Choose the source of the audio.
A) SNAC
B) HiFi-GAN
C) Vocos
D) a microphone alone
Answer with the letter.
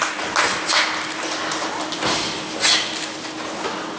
D